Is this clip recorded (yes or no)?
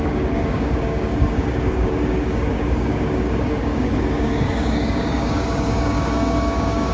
no